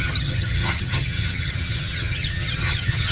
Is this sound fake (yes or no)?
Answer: yes